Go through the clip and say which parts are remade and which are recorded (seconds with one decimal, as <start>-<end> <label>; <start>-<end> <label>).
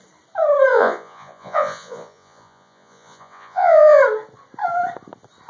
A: 0.0-0.7 recorded; 0.7-4.0 remade; 4.0-5.5 recorded